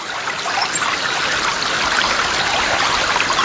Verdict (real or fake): real